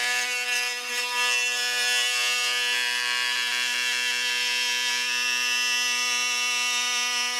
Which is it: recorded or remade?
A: recorded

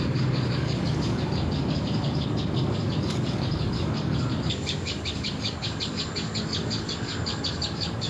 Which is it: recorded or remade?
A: remade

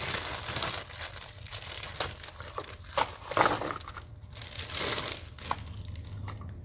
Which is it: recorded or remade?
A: recorded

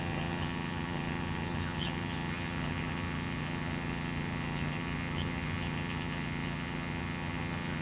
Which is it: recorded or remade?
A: remade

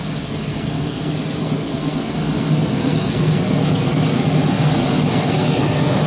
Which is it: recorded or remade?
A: remade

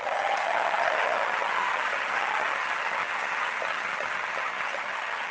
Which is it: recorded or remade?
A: remade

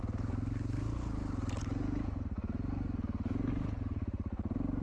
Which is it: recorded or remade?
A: recorded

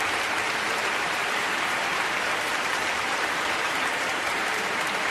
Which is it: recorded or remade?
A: remade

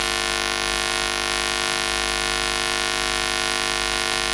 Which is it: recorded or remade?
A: recorded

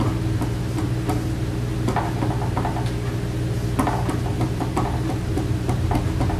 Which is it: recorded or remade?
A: recorded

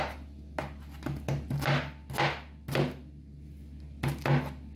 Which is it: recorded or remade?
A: recorded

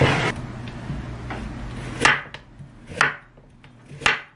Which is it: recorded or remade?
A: recorded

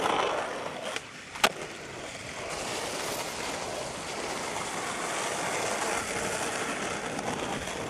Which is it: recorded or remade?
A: recorded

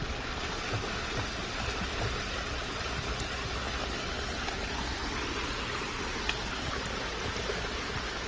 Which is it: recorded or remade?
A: recorded